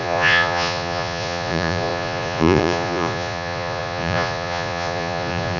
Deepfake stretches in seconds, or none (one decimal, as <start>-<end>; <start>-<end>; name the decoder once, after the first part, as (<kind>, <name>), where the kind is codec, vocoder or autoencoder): 0.0-5.6 (vocoder, Vocos)